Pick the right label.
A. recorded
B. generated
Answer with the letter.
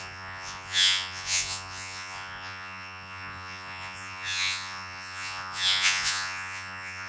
B